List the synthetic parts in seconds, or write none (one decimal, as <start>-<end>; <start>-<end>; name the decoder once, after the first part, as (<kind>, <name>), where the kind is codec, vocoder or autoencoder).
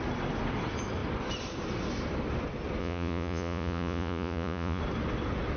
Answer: 2.8-4.8 (vocoder, Vocos)